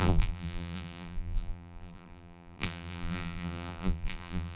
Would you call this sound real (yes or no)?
no